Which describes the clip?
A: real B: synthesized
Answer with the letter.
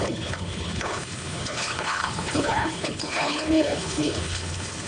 B